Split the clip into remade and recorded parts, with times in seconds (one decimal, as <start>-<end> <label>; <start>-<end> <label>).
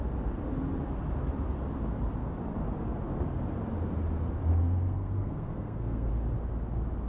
0.0-4.5 recorded; 4.5-6.1 remade; 6.1-7.1 recorded